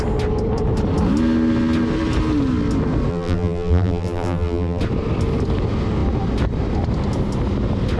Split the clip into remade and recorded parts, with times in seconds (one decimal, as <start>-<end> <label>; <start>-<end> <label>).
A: 0.0-3.1 recorded; 3.1-4.8 remade; 4.8-8.0 recorded